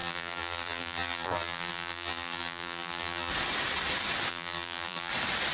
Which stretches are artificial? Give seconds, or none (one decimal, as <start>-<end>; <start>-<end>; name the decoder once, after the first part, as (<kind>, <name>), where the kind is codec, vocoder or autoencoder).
0.0-3.3 (vocoder, BigVGAN v2); 4.3-5.1